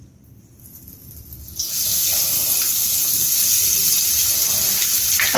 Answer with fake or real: real